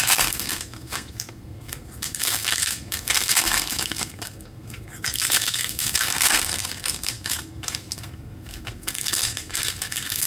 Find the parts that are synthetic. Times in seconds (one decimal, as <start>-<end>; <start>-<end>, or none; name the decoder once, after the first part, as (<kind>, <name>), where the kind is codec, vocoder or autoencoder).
0.0-10.3 (codec, SNAC)